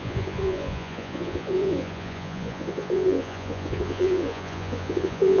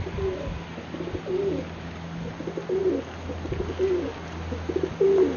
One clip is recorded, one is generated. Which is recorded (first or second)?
second